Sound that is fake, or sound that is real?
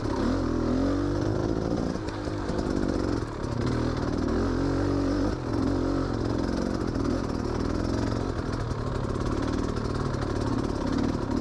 real